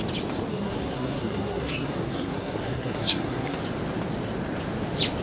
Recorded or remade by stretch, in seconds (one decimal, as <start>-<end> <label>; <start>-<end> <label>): 0.0-0.5 recorded; 0.5-3.6 remade; 3.6-5.2 recorded